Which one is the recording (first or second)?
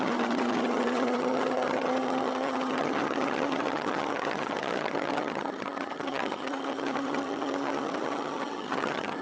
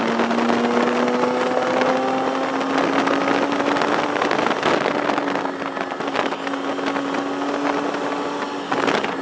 second